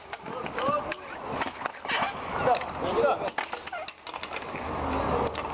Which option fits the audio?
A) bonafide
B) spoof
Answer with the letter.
A